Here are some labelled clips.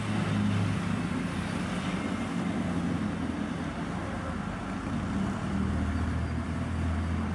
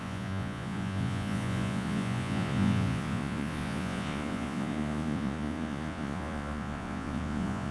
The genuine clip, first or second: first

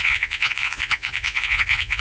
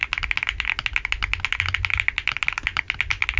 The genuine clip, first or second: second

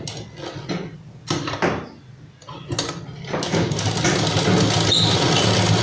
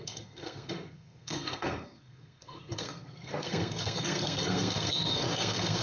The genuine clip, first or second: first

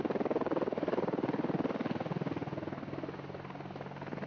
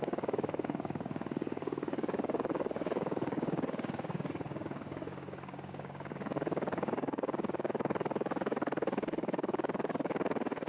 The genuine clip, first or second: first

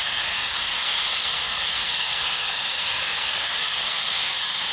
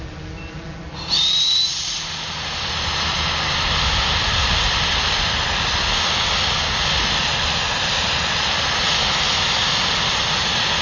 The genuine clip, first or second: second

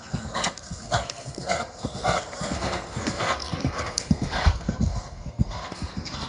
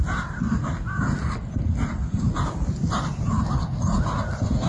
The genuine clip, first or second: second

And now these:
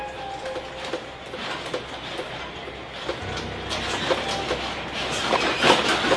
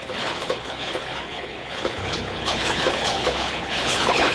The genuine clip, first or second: first